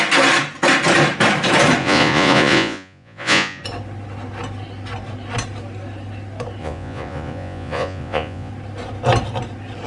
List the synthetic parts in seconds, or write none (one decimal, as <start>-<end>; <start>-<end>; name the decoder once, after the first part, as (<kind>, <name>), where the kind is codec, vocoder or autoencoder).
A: 1.8-3.6 (vocoder, Vocos); 6.6-8.5